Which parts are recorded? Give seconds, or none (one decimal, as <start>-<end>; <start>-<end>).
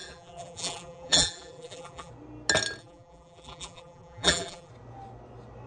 2.1-2.8; 4.7-5.7